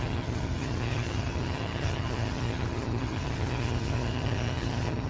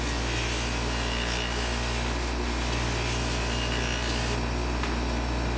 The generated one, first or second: first